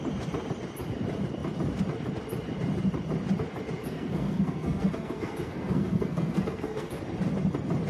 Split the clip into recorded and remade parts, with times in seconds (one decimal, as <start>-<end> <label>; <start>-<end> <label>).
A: 0.0-3.8 recorded; 3.8-7.0 remade; 7.0-7.9 recorded